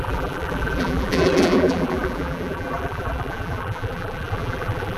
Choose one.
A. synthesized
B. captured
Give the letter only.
A